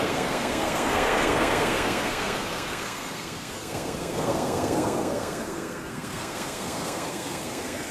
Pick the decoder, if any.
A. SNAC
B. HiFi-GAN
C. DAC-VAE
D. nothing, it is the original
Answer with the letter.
A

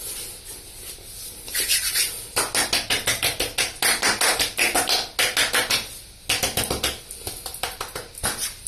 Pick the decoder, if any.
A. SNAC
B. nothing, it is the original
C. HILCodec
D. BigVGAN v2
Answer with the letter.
B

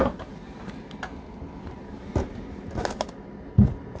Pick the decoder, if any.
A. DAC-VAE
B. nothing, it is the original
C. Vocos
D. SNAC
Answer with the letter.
B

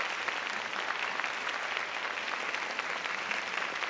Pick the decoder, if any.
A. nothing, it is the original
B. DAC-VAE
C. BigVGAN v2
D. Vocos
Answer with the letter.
A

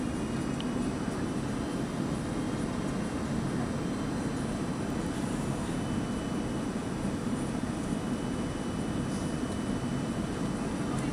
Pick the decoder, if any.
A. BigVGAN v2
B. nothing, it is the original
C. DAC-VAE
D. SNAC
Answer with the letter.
B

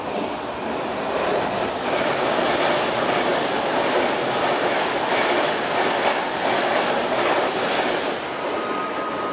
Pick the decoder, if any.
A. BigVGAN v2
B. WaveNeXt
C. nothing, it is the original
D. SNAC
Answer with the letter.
C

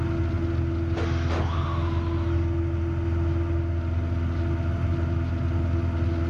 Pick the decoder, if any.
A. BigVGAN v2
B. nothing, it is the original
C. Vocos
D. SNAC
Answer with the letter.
B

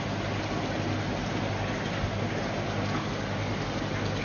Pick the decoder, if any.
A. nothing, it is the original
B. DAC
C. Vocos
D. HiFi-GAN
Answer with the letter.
A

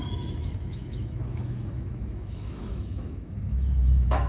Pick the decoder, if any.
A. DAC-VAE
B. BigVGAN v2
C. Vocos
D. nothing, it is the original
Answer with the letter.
A